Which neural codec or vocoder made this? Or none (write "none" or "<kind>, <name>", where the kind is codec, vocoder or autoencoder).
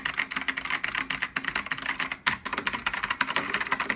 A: none